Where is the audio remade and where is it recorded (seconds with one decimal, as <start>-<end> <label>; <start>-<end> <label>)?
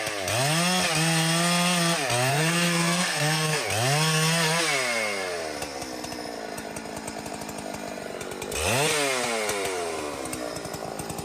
0.0-2.3 recorded; 2.3-3.6 remade; 3.6-11.2 recorded